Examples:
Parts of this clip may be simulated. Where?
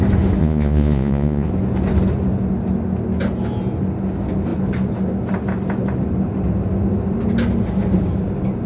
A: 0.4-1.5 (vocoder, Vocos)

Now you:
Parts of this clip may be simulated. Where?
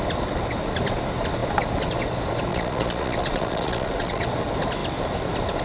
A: 2.5-4.2 (vocoder, Vocos)